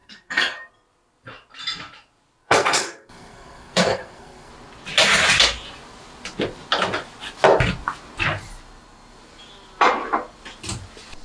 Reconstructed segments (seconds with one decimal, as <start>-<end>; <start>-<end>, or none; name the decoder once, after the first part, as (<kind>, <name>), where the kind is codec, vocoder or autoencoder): 0.0-0.7 (codec, SNAC); 2.4-4.5

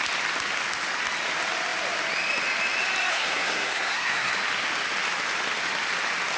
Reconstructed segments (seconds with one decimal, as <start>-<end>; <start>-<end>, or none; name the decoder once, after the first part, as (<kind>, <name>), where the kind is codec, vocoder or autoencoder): 3.1-4.3 (codec, SNAC)

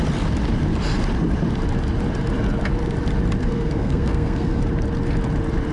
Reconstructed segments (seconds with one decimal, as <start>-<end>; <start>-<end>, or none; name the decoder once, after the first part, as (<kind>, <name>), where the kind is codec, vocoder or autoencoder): 3.4-4.6 (codec, SNAC)

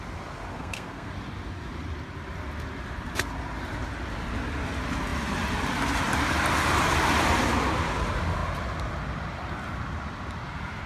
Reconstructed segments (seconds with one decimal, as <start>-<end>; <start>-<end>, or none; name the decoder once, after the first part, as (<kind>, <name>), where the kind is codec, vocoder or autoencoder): 0.5-1.1 (codec, SNAC)

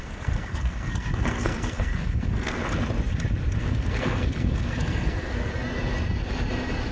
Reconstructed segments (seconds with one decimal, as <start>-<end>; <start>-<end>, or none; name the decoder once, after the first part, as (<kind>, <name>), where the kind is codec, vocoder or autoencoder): 0.0-2.6 (codec, SNAC); 3.6-5.5

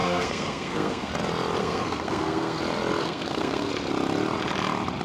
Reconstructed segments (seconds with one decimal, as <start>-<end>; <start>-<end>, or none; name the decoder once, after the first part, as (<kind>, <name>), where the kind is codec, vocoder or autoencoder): 0.0-1.1 (codec, SNAC); 1.6-2.6; 3.0-3.7

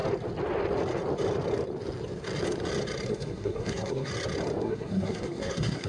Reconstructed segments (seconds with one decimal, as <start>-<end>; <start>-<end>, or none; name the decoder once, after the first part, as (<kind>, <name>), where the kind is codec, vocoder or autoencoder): 3.1-4.1 (codec, SNAC); 4.6-5.9